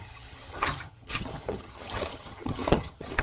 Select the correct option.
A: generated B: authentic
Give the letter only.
A